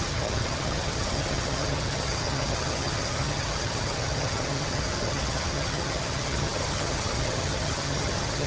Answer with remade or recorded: remade